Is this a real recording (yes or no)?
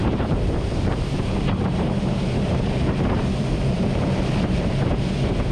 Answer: no